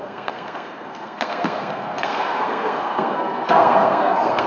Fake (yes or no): yes